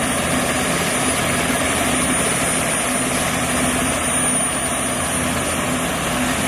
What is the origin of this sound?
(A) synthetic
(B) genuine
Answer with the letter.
B